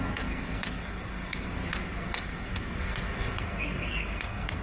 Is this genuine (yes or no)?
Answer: no